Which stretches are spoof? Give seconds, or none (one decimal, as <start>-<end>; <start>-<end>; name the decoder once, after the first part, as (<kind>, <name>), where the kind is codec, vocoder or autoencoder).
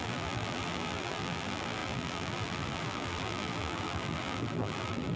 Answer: 0.0-5.2 (vocoder, BigVGAN v2)